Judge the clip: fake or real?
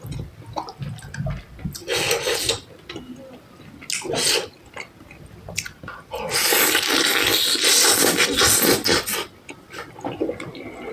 real